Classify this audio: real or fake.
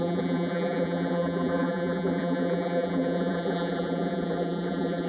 fake